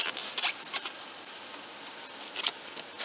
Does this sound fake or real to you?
real